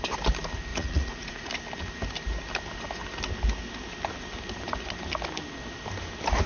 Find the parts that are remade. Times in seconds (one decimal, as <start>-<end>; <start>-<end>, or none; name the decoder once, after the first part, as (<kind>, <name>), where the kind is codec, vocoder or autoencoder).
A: 0.7-1.5 (vocoder, Vocos)